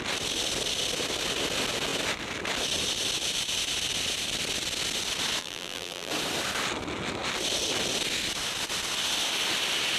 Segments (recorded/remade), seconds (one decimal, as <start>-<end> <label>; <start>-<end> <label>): 0.0-5.4 recorded; 5.4-6.1 remade; 6.1-10.0 recorded